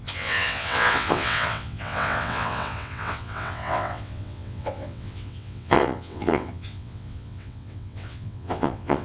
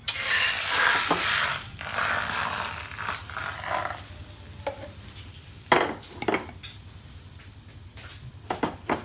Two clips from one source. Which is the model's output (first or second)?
first